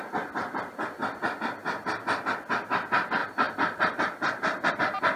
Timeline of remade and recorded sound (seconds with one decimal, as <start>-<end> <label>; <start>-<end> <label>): 0.0-3.2 recorded; 3.2-4.7 remade; 4.7-5.2 recorded